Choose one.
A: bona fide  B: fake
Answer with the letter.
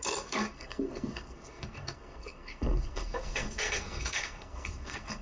B